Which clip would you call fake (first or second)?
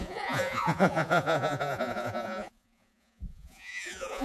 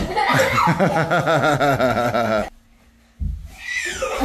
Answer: first